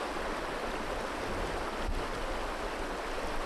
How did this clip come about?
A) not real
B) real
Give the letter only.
B